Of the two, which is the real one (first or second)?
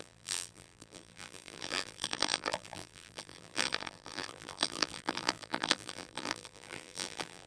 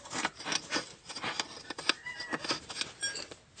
second